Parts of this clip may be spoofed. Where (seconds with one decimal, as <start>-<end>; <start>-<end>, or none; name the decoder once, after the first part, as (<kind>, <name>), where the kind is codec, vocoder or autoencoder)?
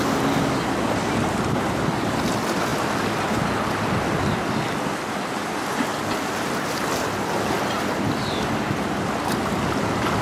none